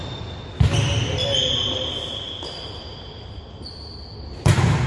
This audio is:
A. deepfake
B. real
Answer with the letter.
B